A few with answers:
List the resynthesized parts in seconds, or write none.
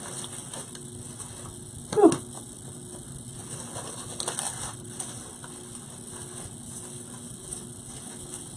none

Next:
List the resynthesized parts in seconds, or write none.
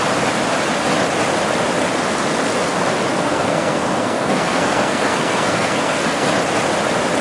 3.1-6.3 (codec, SNAC)